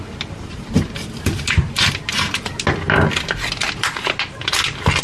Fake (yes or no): no